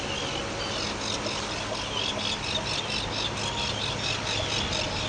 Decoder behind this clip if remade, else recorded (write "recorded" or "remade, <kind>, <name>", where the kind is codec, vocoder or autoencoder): recorded